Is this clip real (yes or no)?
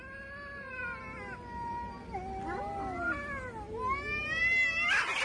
yes